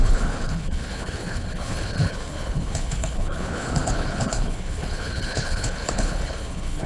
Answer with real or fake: fake